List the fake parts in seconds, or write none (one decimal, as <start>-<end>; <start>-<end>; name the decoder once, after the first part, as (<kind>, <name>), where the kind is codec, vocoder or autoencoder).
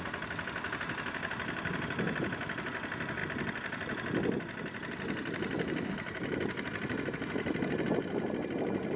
none